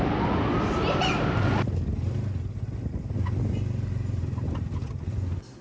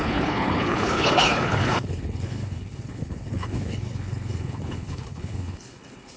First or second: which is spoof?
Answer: second